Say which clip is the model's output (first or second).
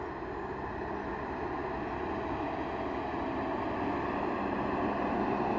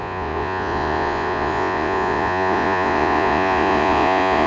second